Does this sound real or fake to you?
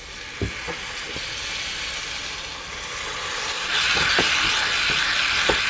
real